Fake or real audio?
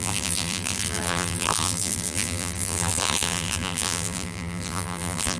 fake